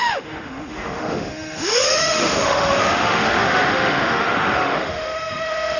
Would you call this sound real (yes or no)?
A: no